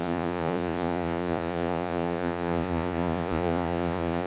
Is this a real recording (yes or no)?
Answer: no